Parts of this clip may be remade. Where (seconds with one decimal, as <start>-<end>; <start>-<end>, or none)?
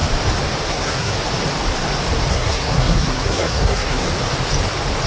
0.7-1.1; 2.3-4.1